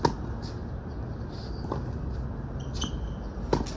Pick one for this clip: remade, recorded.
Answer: recorded